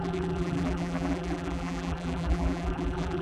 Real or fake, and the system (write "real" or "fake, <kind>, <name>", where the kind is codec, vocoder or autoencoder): fake, vocoder, BigVGAN v2